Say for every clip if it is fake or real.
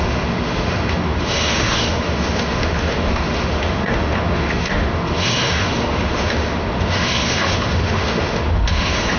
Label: fake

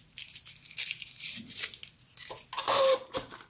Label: real